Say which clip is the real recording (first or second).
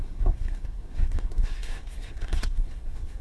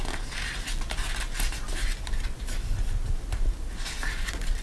second